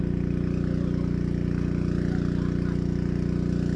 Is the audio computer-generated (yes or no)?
no